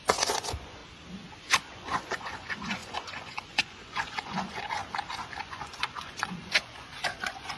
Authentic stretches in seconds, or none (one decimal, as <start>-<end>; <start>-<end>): 0.8-1.4; 4.8-5.4